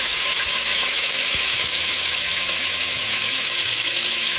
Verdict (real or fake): fake